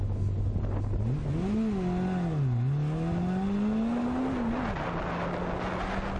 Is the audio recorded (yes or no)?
yes